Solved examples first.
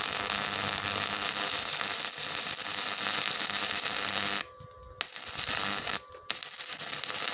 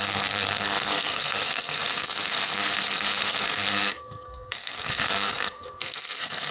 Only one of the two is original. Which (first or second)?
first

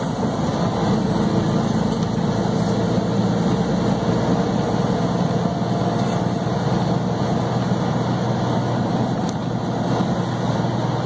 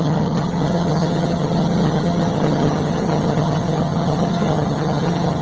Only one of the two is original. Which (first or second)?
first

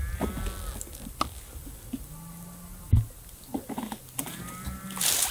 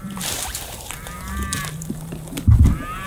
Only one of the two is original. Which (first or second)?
first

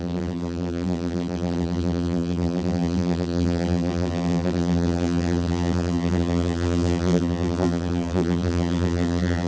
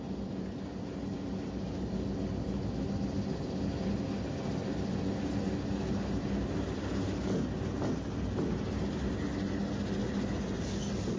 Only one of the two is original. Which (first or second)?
second